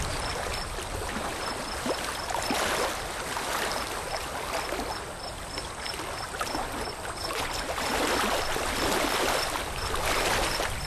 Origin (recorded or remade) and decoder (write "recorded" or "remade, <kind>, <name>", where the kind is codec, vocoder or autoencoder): recorded